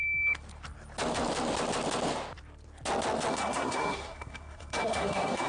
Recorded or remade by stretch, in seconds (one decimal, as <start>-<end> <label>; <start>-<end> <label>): 0.0-3.3 recorded; 3.3-5.5 remade